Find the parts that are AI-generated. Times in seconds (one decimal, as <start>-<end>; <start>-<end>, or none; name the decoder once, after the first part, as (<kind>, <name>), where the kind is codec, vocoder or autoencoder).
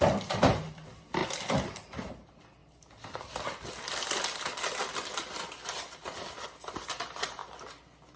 none